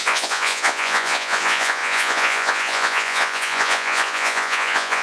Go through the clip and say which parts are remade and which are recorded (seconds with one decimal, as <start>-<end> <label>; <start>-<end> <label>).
0.0-5.0 remade